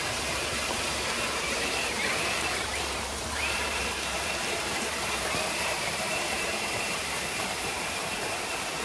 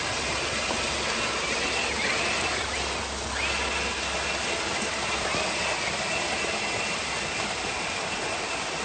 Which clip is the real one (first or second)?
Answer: second